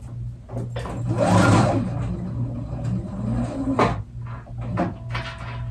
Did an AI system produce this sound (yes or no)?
no